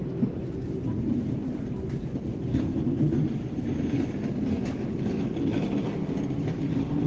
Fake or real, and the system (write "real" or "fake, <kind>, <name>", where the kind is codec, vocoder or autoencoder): real